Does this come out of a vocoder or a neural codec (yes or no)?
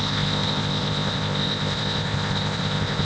yes